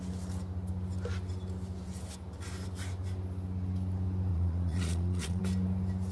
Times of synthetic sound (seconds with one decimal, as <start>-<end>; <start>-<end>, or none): 4.3-5.4